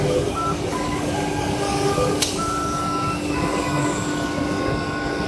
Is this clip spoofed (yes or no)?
yes